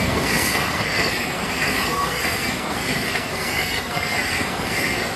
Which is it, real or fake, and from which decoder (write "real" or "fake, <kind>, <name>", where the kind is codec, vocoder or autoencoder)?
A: fake, codec, SNAC